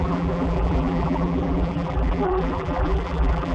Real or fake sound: fake